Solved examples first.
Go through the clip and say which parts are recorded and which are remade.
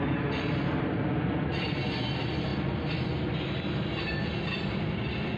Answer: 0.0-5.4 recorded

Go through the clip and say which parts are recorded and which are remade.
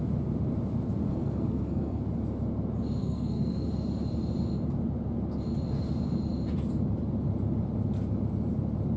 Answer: 0.0-1.1 recorded; 1.1-2.0 remade; 2.0-3.0 recorded; 3.0-3.7 remade; 3.7-9.0 recorded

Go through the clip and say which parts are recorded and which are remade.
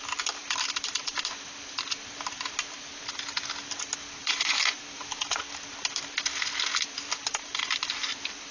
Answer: 0.0-4.2 recorded; 4.2-5.4 remade; 5.4-8.5 recorded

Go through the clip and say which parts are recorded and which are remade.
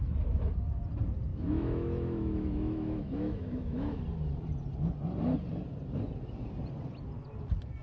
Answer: 0.0-1.3 recorded; 1.3-4.0 remade; 4.0-7.8 recorded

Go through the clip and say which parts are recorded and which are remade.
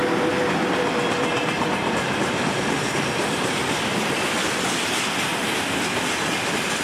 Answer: 0.0-6.8 recorded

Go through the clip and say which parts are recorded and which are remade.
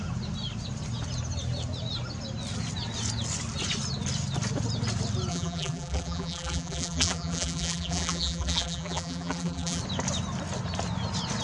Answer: 0.0-5.3 recorded; 5.3-9.8 remade; 9.8-11.4 recorded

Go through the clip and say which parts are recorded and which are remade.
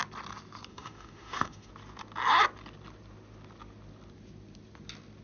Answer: 0.0-0.7 recorded; 0.7-1.7 remade; 1.7-5.2 recorded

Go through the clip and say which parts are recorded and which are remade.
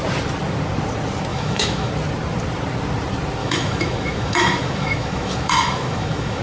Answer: 0.0-1.3 recorded; 1.3-1.9 remade; 1.9-3.4 recorded; 3.4-6.4 remade